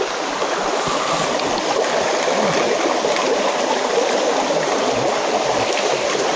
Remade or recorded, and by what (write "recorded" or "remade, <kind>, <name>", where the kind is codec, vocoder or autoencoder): recorded